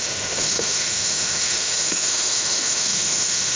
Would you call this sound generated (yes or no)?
yes